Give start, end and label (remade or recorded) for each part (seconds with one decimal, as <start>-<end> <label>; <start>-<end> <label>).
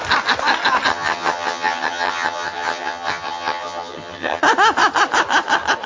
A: 0.0-0.9 recorded; 0.9-4.4 remade; 4.4-5.9 recorded